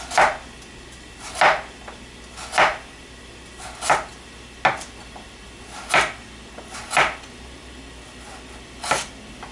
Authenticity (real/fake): real